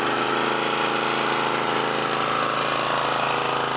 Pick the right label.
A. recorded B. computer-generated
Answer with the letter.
A